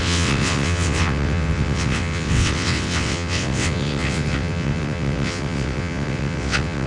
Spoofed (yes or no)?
yes